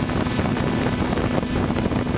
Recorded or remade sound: recorded